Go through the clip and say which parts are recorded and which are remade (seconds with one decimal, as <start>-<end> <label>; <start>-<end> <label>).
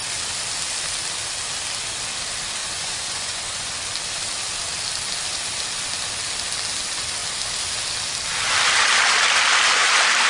0.0-2.6 recorded; 2.6-3.7 remade; 3.7-10.3 recorded